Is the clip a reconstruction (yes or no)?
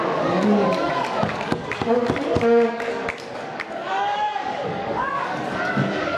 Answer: yes